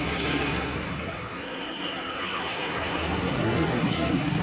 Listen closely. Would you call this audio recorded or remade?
remade